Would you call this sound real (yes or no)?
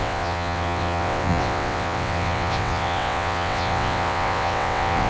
no